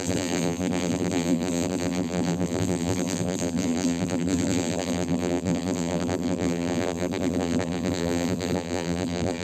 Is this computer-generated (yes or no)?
yes